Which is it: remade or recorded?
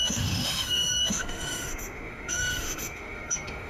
remade